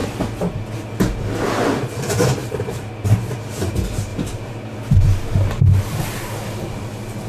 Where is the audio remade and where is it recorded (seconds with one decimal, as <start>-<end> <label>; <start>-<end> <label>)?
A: 0.0-2.4 recorded; 2.4-3.0 remade; 3.0-4.1 recorded; 4.1-5.0 remade; 5.0-7.3 recorded